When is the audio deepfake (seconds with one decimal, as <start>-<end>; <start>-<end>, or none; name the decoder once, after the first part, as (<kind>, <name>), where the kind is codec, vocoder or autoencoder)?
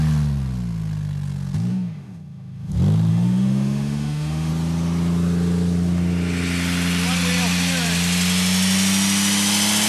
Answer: 1.7-2.7 (autoencoder, DAC-VAE); 3.1-4.5